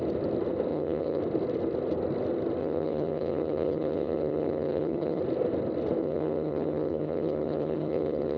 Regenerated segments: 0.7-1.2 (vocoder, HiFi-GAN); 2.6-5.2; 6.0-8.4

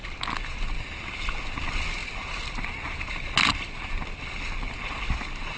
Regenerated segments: none

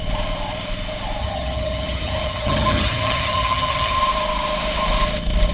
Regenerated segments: 1.2-3.9 (vocoder, HiFi-GAN)

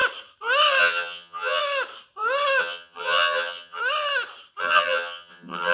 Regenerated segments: 0.8-1.6 (vocoder, HiFi-GAN); 2.6-3.8; 4.6-5.7

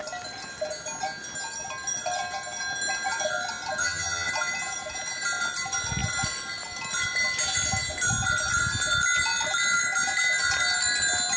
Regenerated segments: 3.8-4.3 (vocoder, HiFi-GAN)

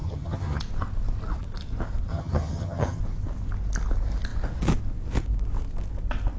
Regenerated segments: 0.0-0.6 (vocoder, HiFi-GAN); 2.1-3.0

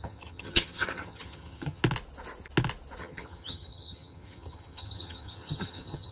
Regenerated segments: 0.0-1.8 (vocoder, HiFi-GAN); 3.0-6.1